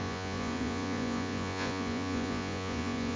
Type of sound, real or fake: fake